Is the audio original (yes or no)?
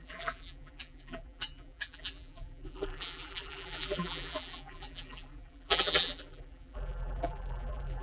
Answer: no